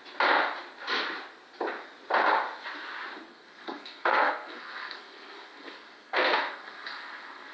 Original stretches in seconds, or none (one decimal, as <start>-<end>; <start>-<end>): 0.0-3.3